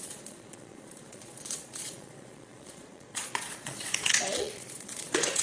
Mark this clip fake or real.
fake